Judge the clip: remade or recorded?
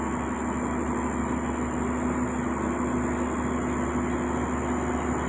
recorded